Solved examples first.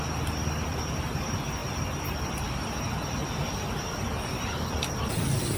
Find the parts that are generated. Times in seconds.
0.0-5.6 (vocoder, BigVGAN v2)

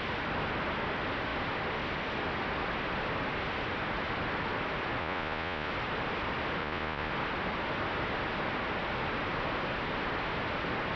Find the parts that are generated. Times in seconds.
5.0-5.7 (vocoder, Vocos); 6.6-7.1